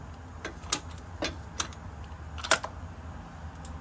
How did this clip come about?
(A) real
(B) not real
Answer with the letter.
A